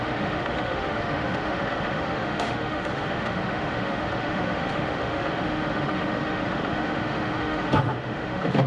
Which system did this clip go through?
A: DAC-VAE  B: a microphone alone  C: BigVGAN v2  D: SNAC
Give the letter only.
A